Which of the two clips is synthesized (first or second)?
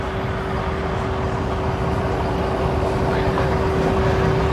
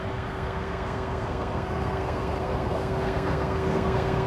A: second